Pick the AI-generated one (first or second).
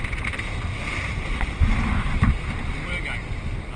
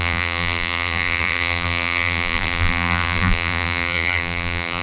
second